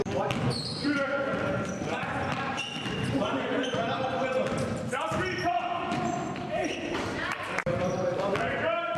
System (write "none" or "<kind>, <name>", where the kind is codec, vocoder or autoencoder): vocoder, BigVGAN v2